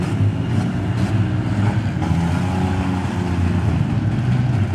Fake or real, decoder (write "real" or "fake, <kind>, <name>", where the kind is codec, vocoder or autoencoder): real